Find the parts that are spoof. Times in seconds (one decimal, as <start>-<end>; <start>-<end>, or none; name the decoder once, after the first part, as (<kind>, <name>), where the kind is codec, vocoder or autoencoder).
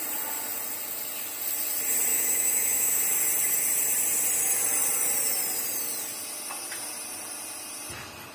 2.1-3.0 (autoencoder, DAC-VAE)